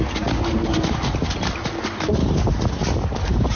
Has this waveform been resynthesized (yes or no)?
no